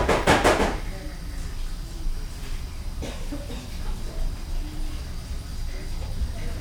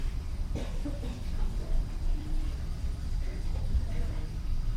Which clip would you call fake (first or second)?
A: second